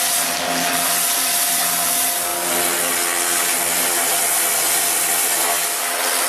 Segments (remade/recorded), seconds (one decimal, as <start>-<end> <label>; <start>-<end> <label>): 0.0-6.3 recorded